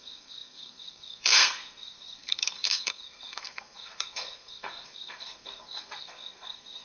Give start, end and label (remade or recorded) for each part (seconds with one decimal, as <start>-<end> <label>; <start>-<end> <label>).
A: 0.0-6.8 remade